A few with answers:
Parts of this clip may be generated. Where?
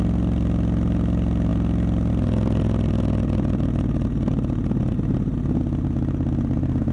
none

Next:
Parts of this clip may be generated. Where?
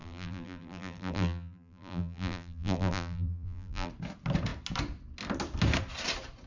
0.0-3.9 (vocoder, BigVGAN v2)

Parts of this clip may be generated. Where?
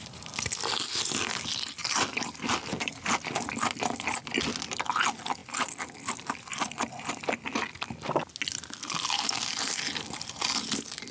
none